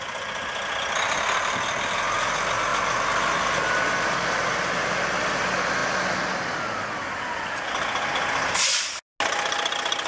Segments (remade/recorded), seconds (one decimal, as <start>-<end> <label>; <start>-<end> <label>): 0.0-10.1 recorded